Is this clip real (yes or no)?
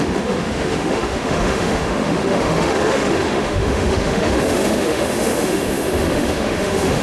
no